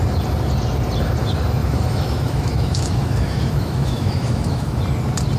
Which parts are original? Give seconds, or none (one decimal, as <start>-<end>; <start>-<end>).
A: 0.0-1.6; 4.8-5.4